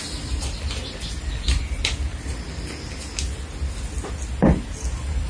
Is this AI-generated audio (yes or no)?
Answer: no